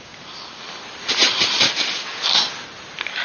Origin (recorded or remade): recorded